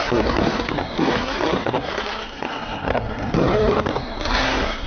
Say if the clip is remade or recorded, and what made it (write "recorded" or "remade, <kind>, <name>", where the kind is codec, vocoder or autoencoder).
remade, codec, SNAC